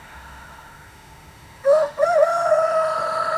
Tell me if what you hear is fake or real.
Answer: fake